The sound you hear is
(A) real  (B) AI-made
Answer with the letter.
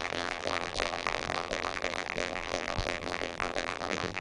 B